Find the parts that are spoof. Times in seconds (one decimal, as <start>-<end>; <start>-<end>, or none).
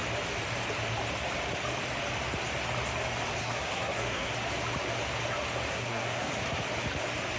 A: 3.4-4.3; 5.7-6.3